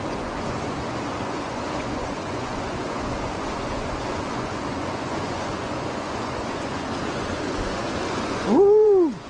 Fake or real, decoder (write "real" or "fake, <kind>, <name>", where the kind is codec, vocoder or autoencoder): fake, vocoder, Vocos